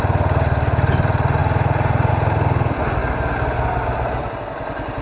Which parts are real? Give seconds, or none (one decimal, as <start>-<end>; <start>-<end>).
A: 0.0-5.0